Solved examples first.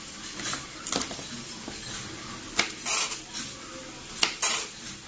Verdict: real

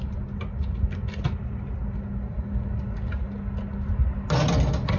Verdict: real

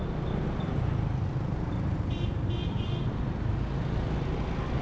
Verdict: real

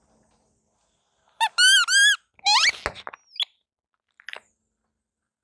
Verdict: real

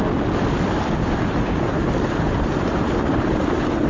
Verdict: real